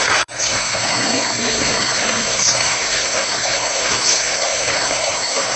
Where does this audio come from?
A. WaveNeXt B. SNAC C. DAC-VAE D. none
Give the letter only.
B